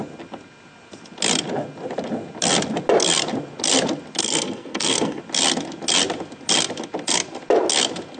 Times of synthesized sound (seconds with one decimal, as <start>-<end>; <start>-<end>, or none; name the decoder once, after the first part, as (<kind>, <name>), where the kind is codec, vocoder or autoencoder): 4.2-5.2 (codec, SNAC)